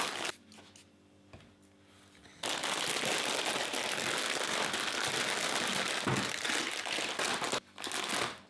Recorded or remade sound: recorded